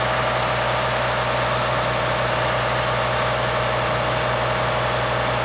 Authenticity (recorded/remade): recorded